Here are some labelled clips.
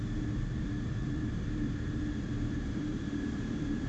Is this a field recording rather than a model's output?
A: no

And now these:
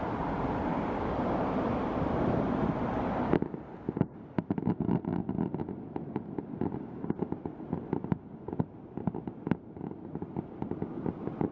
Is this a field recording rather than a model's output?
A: yes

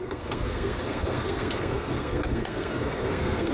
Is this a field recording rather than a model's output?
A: no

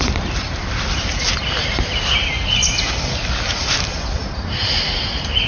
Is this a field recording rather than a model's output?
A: yes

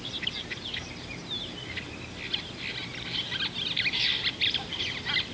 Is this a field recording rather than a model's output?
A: yes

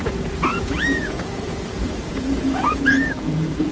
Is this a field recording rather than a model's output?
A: no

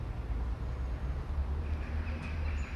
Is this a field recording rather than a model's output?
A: yes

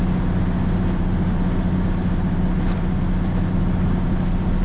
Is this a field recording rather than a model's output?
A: yes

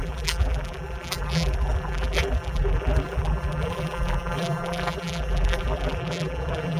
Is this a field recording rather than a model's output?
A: no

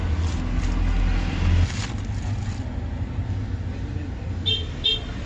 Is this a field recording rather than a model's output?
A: yes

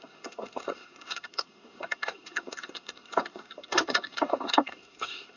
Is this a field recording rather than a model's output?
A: no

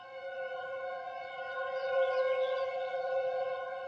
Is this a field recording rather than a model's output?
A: no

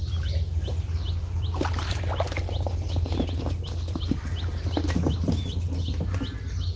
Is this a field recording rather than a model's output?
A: yes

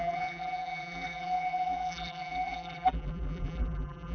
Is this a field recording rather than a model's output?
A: no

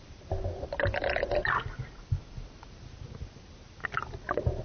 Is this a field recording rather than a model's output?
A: yes